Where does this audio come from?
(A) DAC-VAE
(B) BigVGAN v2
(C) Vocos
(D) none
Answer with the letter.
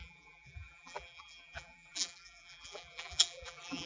B